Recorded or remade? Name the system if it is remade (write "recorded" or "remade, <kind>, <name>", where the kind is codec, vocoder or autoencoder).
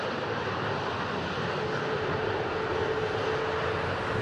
recorded